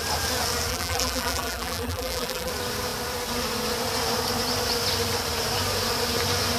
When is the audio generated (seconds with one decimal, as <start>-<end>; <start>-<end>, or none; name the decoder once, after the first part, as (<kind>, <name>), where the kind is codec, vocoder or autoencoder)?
0.7-2.5 (vocoder, BigVGAN v2)